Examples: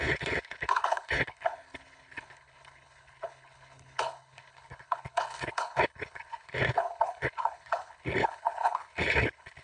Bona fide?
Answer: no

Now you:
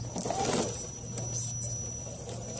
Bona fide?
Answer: yes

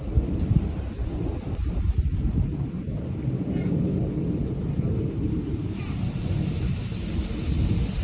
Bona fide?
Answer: yes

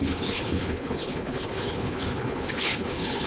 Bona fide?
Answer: no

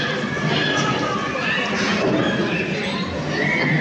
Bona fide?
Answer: yes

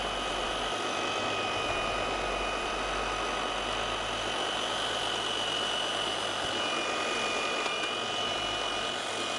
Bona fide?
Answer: yes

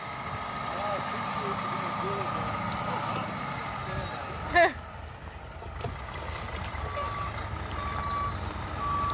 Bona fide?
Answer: yes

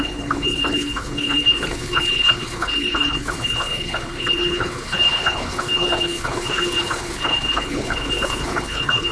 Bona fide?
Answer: no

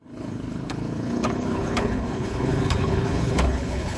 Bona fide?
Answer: no